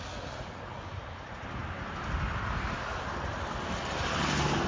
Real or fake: real